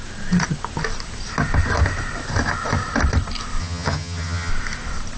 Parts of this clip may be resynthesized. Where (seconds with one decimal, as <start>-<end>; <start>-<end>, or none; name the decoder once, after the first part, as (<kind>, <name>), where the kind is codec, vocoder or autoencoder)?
3.6-4.5 (vocoder, HiFi-GAN)